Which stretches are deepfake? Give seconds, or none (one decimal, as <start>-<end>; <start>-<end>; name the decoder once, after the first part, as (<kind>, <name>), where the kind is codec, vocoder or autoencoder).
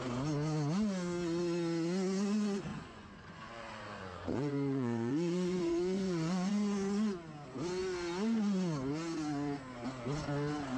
2.7-6.5 (vocoder, Vocos)